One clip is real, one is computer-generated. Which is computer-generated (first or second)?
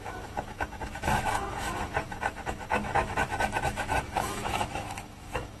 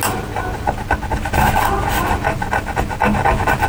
first